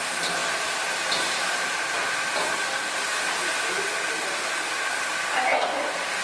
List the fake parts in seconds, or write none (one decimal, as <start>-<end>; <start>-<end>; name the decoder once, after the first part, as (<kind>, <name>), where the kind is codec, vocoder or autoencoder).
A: none